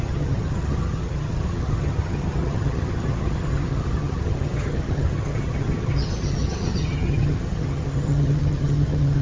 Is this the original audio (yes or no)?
no